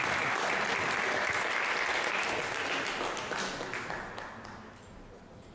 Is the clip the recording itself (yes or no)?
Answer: yes